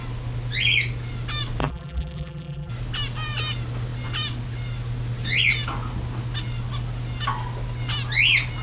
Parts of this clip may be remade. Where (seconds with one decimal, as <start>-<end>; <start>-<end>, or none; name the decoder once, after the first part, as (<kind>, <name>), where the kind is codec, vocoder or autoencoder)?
1.6-2.7 (vocoder, BigVGAN v2)